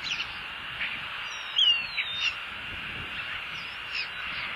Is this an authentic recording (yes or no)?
yes